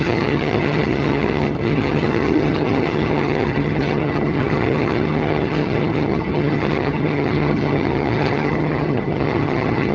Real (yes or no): no